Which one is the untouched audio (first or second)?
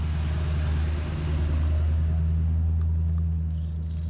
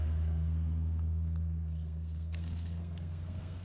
first